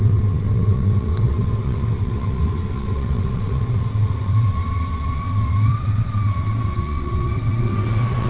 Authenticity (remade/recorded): remade